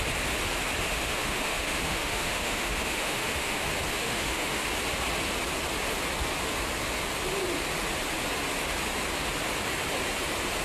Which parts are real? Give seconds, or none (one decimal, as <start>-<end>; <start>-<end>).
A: 0.0-0.9; 3.6-4.0; 4.6-10.6